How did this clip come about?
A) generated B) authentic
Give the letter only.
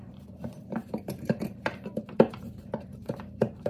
A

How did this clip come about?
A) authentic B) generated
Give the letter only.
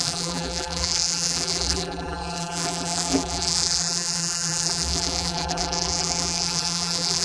B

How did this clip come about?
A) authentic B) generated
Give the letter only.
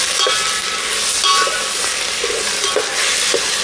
A